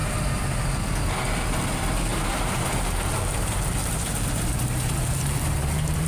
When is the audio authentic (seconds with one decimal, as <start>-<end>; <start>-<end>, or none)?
0.6-2.1